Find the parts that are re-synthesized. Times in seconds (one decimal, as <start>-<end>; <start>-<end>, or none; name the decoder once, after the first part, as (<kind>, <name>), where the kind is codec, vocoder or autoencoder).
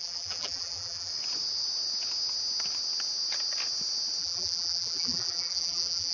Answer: 0.0-1.1 (vocoder, BigVGAN v2); 4.2-6.1